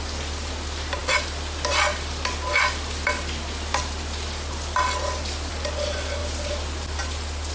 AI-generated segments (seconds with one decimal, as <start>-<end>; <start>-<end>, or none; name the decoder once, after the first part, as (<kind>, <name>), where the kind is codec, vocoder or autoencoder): none